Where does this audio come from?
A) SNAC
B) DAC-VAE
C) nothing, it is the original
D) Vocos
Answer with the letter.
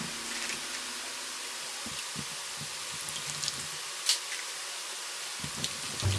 C